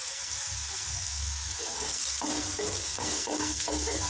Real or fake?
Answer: fake